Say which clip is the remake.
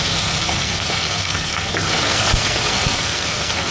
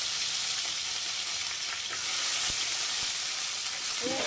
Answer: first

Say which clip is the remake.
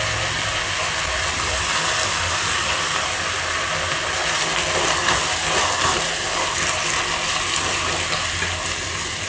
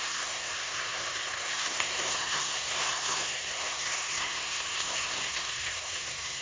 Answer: second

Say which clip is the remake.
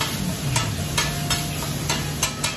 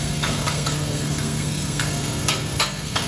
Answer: second